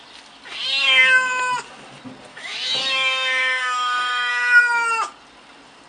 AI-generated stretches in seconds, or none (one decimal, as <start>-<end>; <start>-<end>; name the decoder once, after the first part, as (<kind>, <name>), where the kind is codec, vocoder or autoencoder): 2.3-4.3 (autoencoder, DAC-VAE)